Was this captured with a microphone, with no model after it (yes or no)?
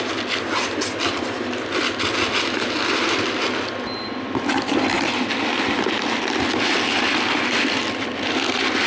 yes